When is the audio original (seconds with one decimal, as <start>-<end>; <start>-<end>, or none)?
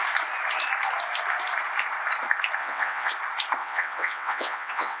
0.0-2.6; 3.1-3.6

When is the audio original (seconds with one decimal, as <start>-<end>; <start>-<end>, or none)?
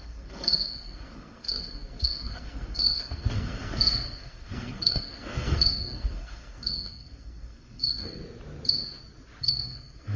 8.2-9.4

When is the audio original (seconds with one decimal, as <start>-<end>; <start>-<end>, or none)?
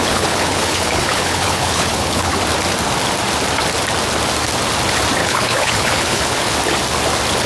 2.3-5.2; 6.5-7.5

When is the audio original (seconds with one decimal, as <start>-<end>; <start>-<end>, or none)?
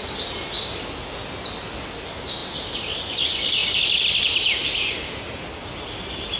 0.0-2.4; 3.1-6.4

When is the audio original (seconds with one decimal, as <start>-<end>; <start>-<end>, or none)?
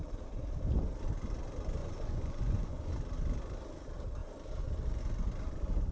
0.0-1.8; 2.9-5.9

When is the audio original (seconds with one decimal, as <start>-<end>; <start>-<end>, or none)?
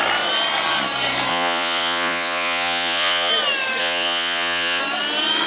0.0-1.3; 3.3-3.8; 4.8-5.5